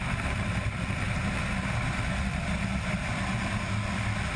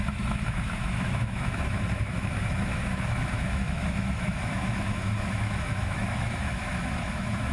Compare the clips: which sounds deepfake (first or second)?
second